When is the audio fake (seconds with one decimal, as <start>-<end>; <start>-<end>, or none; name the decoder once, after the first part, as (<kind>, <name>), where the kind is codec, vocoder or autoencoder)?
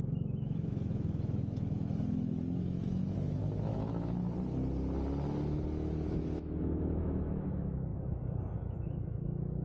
0.0-4.2 (autoencoder, DAC-VAE); 6.1-9.6